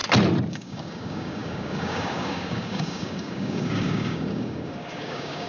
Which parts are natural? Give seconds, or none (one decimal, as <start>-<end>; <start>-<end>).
0.0-0.5